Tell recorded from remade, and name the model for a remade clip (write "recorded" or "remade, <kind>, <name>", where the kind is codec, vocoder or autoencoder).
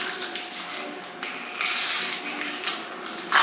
recorded